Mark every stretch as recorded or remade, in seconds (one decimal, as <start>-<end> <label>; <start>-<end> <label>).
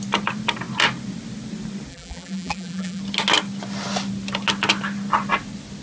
0.0-1.9 recorded; 1.9-3.0 remade; 3.0-5.8 recorded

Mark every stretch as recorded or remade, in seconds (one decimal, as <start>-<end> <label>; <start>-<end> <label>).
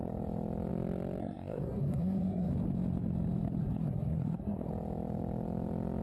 0.0-1.2 recorded; 1.2-2.5 remade; 2.5-3.6 recorded; 3.6-4.7 remade; 4.7-6.0 recorded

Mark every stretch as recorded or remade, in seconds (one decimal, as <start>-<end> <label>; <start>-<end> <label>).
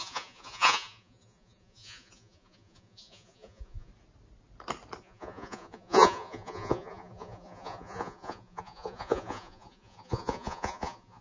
0.0-3.9 remade; 3.9-5.0 recorded; 5.0-11.2 remade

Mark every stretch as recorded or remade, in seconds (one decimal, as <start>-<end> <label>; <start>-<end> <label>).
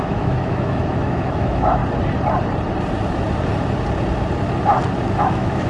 0.0-1.8 remade; 1.8-5.2 recorded; 5.2-5.7 remade